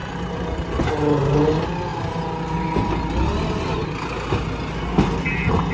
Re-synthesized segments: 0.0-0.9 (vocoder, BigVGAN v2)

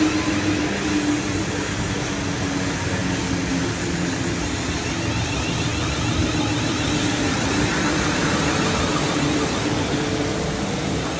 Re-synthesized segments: none